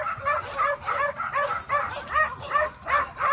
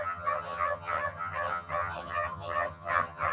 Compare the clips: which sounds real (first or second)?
first